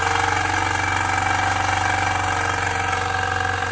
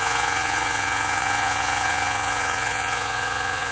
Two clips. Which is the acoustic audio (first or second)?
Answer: first